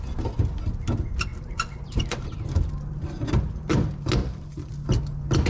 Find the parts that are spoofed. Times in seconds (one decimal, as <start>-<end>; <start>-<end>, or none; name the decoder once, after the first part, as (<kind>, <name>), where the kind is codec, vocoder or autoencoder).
1.3-3.2 (vocoder, BigVGAN v2); 4.2-4.7